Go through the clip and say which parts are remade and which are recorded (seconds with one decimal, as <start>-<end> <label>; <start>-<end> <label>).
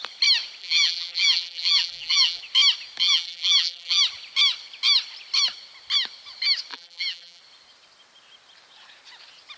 0.0-0.6 recorded; 0.6-2.4 remade; 2.4-3.0 recorded; 3.0-4.0 remade; 4.0-6.7 recorded; 6.7-7.4 remade; 7.4-9.6 recorded